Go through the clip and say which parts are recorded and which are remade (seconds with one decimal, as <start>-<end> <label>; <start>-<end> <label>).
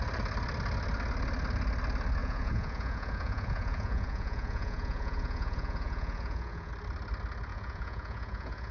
0.0-2.2 recorded; 2.2-6.7 remade; 6.7-7.5 recorded; 7.5-8.7 remade